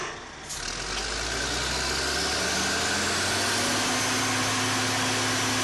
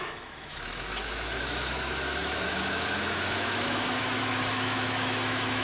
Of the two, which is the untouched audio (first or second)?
first